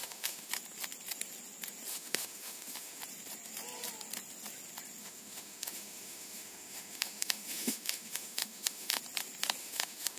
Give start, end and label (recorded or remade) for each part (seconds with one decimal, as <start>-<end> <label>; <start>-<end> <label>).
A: 0.0-0.5 remade; 0.5-1.9 recorded; 1.9-3.0 remade; 3.0-5.0 recorded; 5.0-9.0 remade; 9.0-9.6 recorded; 9.6-10.2 remade